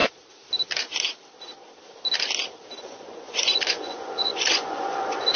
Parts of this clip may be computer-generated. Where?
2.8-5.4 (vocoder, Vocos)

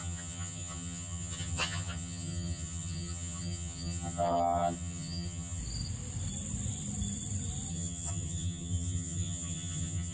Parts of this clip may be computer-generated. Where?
0.0-5.6 (vocoder, HiFi-GAN); 7.7-10.1

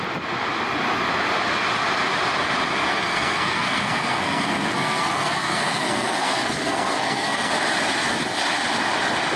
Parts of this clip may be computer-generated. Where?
2.9-7.5 (codec, SNAC)

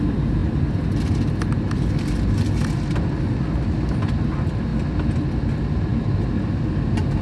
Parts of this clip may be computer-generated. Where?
none

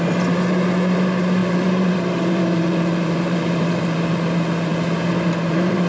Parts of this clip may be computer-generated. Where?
0.0-4.7 (vocoder, BigVGAN v2); 5.5-5.9

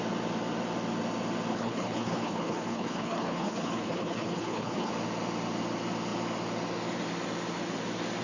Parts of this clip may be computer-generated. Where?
1.5-4.9 (codec, HILCodec)